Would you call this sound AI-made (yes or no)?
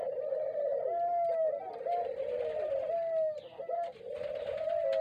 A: no